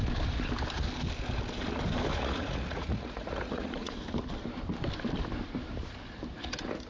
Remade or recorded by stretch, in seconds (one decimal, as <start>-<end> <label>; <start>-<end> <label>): 0.0-2.1 recorded; 2.1-3.9 remade; 3.9-6.9 recorded